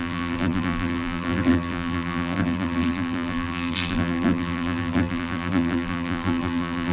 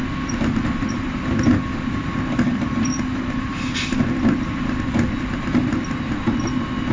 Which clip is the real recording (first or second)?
second